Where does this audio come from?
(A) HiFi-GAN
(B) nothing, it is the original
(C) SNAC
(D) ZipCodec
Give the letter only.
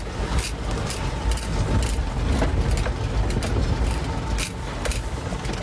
B